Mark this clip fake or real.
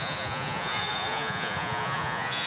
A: fake